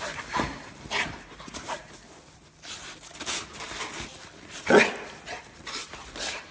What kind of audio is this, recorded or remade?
recorded